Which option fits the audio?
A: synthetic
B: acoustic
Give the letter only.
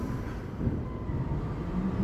B